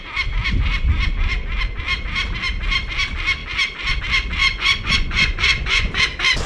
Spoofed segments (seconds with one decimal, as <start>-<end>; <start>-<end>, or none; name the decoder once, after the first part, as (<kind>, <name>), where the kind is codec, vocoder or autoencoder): 4.4-6.0 (vocoder, Vocos)